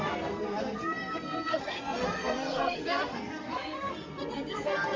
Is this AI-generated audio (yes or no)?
yes